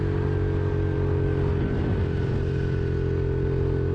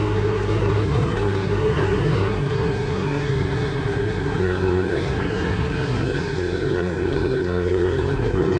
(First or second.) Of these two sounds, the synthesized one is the second